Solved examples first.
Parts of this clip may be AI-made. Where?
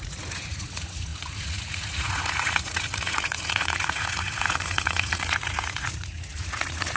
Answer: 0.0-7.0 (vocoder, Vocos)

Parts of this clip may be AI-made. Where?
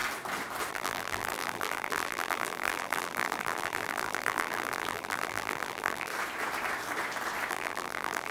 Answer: 0.7-6.1 (vocoder, BigVGAN v2); 7.5-8.3